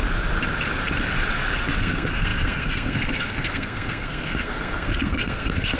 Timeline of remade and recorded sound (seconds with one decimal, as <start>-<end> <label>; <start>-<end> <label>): 0.0-1.8 recorded; 1.8-5.8 remade